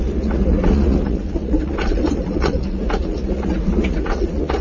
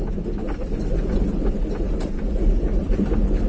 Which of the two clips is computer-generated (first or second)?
first